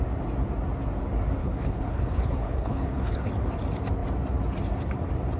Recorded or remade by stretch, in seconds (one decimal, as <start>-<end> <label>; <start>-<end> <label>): 0.0-1.4 recorded; 1.4-3.3 remade; 3.3-5.4 recorded